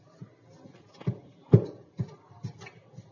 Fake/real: real